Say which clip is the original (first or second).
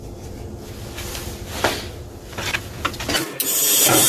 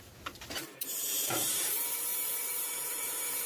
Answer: first